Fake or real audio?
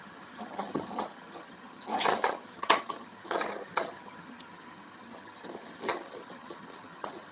fake